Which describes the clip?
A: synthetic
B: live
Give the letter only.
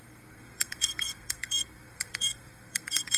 A